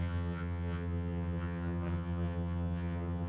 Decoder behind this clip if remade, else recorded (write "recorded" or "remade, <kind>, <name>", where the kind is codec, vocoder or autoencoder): remade, vocoder, HiFi-GAN